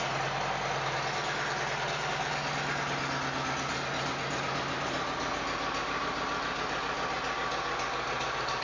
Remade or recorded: recorded